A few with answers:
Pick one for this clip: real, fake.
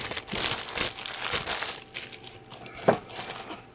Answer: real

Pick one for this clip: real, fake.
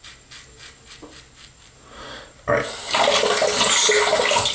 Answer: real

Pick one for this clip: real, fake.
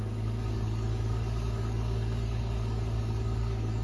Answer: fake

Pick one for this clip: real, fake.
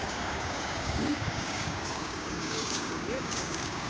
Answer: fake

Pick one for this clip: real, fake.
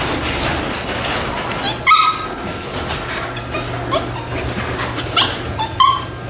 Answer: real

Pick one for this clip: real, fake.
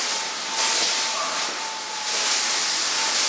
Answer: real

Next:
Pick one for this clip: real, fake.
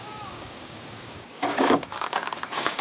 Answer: fake